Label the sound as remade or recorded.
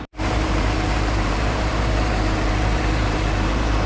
remade